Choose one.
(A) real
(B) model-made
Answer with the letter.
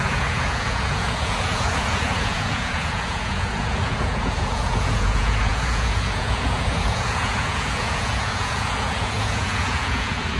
B